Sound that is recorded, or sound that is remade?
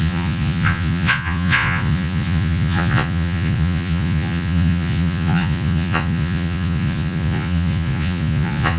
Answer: remade